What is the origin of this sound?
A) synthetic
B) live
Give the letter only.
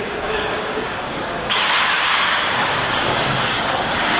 A